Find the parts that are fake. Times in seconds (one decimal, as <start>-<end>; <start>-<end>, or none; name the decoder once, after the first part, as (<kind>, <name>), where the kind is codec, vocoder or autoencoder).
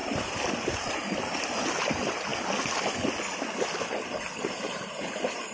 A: 1.9-2.3 (vocoder, BigVGAN v2); 4.4-5.5